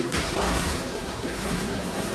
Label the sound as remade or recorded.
remade